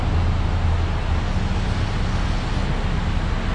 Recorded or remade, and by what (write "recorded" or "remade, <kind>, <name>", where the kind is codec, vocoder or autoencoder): recorded